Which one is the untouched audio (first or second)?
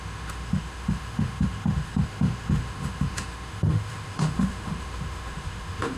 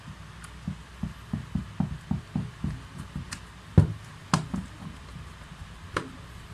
second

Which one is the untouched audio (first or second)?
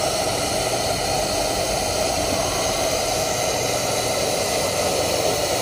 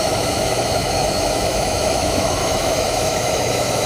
first